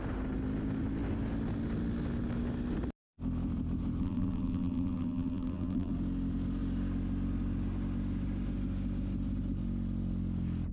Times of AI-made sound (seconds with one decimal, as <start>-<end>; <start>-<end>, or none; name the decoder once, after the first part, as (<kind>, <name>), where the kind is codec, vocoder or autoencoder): 4.0-5.9 (vocoder, BigVGAN v2)